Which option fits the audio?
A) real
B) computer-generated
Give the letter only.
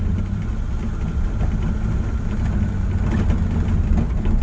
A